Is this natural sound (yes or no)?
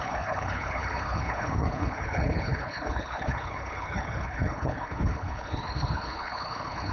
no